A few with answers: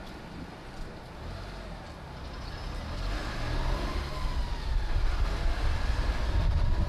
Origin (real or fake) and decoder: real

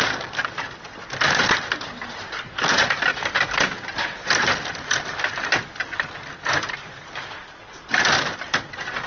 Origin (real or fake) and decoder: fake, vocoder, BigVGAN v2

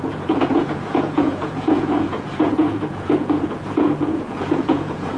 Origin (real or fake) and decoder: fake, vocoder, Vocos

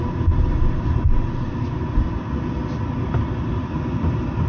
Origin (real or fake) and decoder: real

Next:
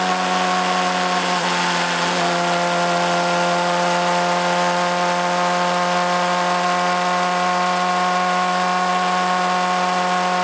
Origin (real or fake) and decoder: real